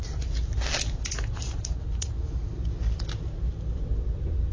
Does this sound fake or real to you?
real